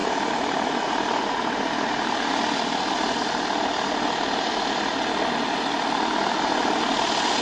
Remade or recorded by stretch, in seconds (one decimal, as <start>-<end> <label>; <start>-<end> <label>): 0.0-7.4 recorded